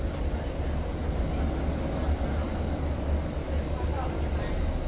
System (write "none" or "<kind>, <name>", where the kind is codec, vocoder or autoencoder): none